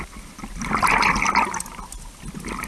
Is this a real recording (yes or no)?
yes